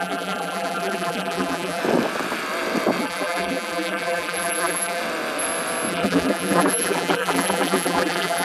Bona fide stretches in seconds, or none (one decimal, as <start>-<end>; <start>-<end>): 1.8-3.0; 5.0-5.9